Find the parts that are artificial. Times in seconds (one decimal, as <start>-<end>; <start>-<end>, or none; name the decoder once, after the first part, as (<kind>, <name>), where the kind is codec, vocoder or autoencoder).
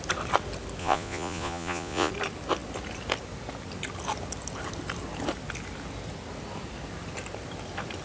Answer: 0.8-2.1 (vocoder, Vocos)